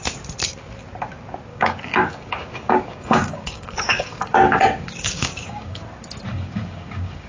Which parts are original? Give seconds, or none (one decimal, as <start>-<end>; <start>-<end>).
0.0-1.5; 5.8-6.3